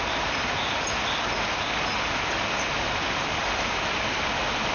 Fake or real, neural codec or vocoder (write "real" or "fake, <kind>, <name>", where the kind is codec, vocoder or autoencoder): real